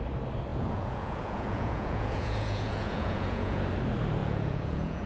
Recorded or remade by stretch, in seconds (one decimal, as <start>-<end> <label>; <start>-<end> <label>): 0.0-0.5 recorded; 0.5-3.6 remade; 3.6-4.2 recorded; 4.2-5.1 remade